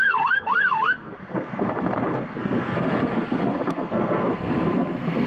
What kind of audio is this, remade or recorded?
remade